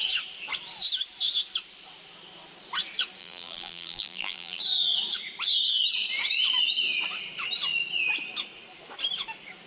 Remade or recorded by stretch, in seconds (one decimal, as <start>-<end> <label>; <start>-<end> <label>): 0.0-3.2 recorded; 3.2-4.6 remade; 4.6-9.7 recorded